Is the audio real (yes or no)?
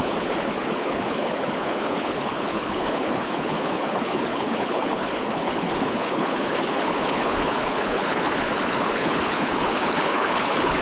no